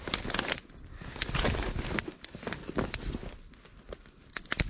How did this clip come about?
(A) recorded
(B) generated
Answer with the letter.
A